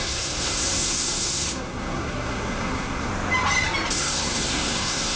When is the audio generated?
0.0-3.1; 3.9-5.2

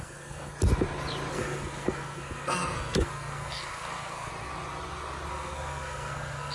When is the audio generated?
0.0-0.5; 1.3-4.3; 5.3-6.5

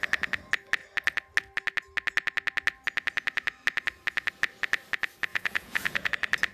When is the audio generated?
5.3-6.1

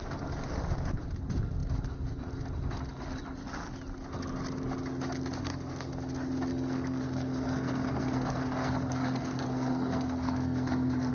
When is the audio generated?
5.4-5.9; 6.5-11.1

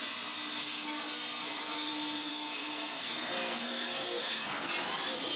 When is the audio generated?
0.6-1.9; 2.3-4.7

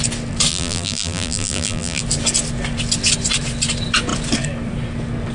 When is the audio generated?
0.5-2.0